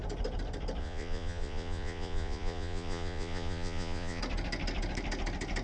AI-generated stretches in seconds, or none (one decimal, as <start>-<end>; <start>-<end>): 0.8-4.2